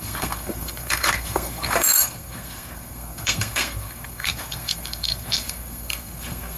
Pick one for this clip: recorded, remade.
remade